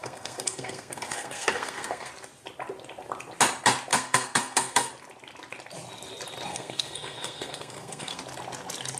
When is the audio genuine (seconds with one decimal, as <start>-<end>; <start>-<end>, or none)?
2.1-3.9; 4.9-6.5; 8.2-9.0